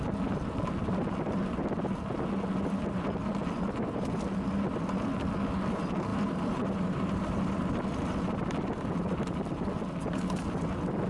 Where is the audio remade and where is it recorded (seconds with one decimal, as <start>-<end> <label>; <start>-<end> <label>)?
0.0-6.1 recorded; 6.1-7.7 remade; 7.7-11.1 recorded

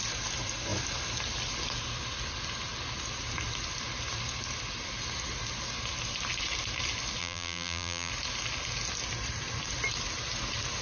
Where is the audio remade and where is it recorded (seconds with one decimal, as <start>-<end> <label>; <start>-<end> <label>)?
0.0-7.2 recorded; 7.2-8.1 remade; 8.1-10.8 recorded

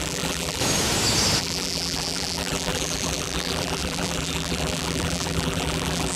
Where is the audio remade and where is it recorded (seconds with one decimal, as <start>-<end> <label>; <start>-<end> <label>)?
0.0-0.6 remade; 0.6-1.4 recorded; 1.4-6.2 remade

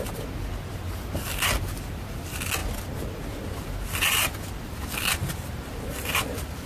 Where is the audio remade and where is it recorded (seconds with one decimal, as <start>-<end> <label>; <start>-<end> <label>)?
0.0-5.2 recorded; 5.2-6.7 remade

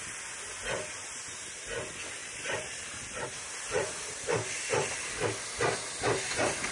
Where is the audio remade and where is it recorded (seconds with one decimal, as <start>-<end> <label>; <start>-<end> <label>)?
0.0-2.2 recorded; 2.2-4.5 remade; 4.5-6.7 recorded

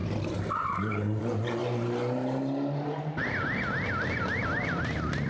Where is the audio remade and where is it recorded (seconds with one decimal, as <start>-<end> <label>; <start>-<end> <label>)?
0.0-1.2 remade; 1.2-5.3 recorded

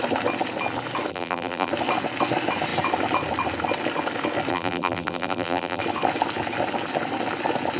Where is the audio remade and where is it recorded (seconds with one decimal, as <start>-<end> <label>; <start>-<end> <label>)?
0.0-1.1 recorded; 1.1-1.7 remade; 1.7-4.5 recorded; 4.5-5.8 remade; 5.8-7.8 recorded

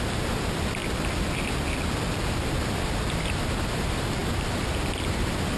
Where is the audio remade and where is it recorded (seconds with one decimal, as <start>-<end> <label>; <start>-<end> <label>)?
0.0-0.8 remade; 0.8-2.3 recorded; 2.3-5.6 remade